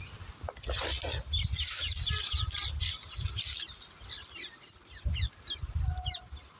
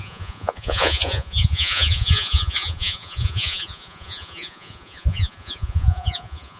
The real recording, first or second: first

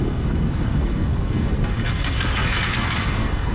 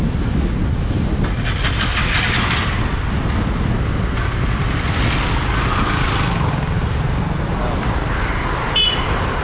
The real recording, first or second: second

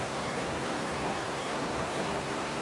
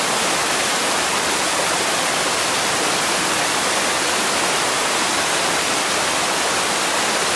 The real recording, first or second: second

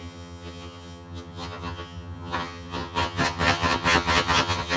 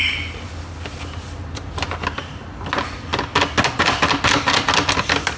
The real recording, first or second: second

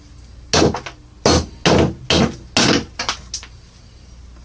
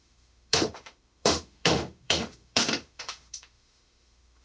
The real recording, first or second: first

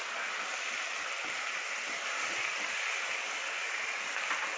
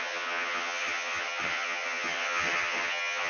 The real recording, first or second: first